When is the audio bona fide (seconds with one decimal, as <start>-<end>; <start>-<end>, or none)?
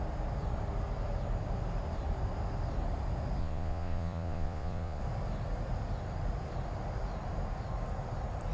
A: 0.0-3.4; 5.0-8.5